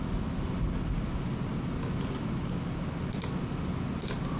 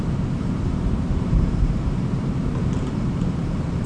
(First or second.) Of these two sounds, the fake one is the second